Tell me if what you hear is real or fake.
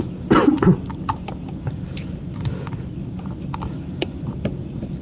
real